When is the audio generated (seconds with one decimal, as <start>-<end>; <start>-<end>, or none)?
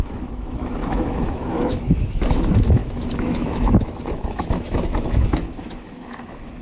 0.0-6.6